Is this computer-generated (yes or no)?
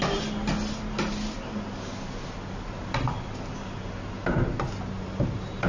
no